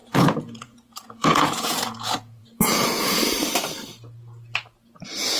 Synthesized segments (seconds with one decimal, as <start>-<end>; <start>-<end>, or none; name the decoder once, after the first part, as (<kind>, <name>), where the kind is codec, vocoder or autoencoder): 0.0-3.2 (vocoder, Vocos)